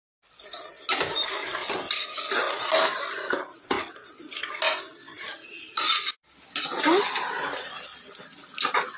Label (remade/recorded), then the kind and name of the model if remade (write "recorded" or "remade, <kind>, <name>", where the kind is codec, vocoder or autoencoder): recorded